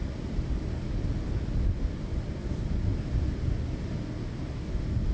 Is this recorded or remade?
recorded